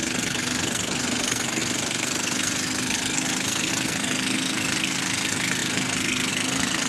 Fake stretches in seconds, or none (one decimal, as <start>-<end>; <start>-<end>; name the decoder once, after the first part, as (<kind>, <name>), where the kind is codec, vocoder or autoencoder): 0.0-6.9 (codec, SNAC)